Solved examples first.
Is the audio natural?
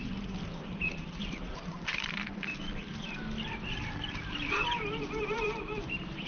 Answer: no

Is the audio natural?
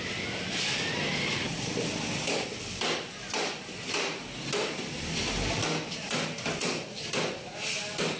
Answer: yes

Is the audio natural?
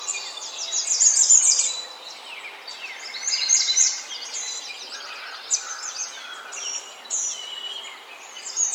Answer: yes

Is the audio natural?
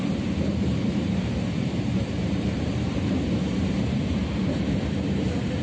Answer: no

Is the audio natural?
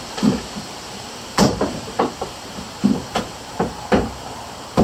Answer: no